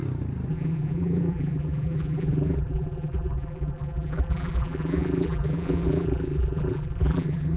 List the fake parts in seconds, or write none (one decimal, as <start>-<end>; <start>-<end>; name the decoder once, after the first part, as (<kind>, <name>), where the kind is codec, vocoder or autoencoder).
0.5-7.6 (vocoder, BigVGAN v2)